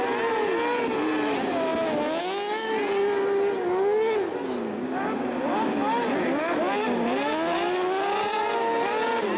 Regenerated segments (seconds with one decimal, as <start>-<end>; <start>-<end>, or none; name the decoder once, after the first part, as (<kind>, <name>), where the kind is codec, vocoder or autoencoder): none